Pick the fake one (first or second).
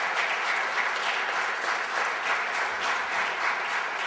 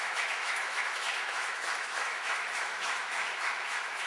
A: second